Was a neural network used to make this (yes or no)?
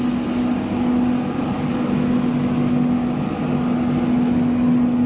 no